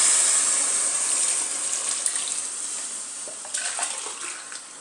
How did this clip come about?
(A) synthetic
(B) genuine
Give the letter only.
B